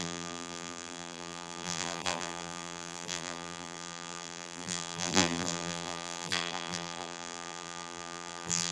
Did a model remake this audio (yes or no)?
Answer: yes